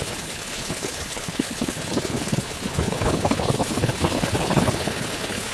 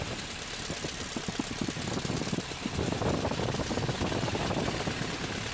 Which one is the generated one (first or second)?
first